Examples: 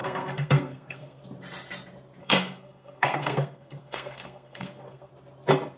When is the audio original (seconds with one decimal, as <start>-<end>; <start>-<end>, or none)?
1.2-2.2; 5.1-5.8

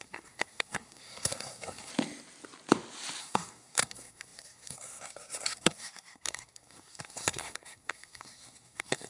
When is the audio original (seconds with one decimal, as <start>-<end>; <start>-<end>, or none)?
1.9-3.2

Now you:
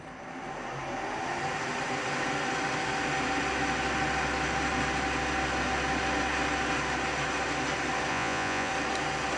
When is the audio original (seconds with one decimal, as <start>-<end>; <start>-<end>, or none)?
0.0-8.1; 8.7-9.4

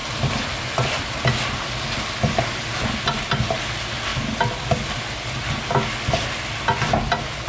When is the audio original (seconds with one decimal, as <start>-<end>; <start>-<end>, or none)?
0.0-7.5

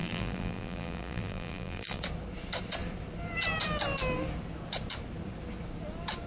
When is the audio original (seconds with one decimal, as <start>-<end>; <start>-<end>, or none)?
2.0-6.3

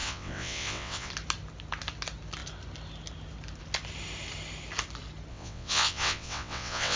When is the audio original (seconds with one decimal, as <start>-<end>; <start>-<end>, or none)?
1.1-5.3